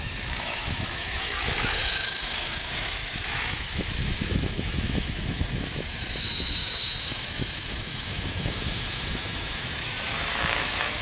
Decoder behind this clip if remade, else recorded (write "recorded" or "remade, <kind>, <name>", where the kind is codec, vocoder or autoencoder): remade, autoencoder, DAC-VAE